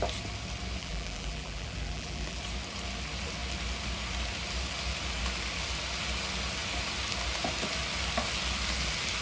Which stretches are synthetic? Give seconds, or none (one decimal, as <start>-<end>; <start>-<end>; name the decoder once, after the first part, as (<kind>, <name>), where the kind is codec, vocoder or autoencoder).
0.8-2.4 (vocoder, BigVGAN v2)

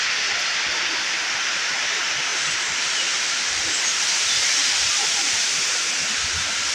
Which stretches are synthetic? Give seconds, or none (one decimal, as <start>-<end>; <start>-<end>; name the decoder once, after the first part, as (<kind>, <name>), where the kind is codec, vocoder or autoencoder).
2.3-6.3 (vocoder, BigVGAN v2)

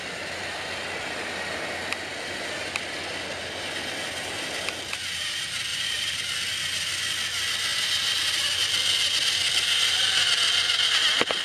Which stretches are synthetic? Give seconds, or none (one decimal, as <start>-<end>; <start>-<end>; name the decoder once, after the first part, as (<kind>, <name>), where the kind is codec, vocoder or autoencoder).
5.7-6.3 (vocoder, BigVGAN v2)

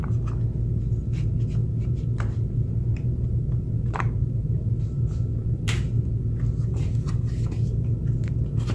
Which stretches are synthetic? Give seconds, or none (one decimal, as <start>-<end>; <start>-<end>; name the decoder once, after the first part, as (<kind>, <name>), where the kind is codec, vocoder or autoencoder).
1.6-5.8 (vocoder, BigVGAN v2); 6.7-7.3

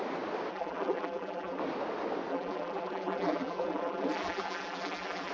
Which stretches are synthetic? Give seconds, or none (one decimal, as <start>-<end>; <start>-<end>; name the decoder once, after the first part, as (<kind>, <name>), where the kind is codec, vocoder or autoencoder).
0.5-1.6 (vocoder, BigVGAN v2); 2.3-5.3